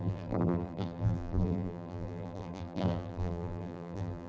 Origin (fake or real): fake